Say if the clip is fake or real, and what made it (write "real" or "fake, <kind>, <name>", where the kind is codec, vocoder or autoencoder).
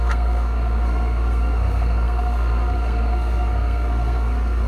fake, codec, SNAC